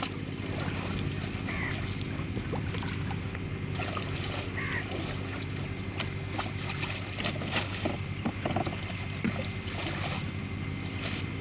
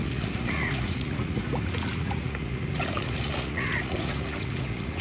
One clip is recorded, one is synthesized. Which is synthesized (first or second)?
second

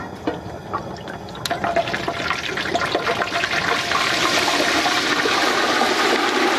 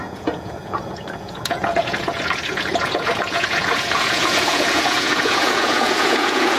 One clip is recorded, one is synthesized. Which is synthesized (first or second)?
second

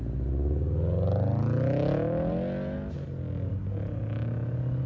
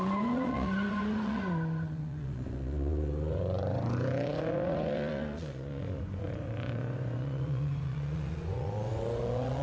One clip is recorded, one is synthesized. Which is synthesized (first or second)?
second